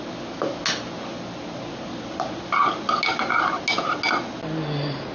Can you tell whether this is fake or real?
real